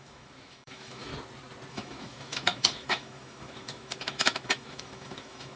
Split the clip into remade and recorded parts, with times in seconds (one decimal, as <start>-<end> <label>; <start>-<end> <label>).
0.0-1.1 remade; 1.1-1.7 recorded; 1.7-5.6 remade